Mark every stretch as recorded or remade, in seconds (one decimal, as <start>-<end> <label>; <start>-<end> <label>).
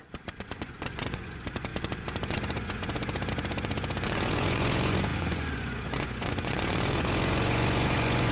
0.0-8.3 remade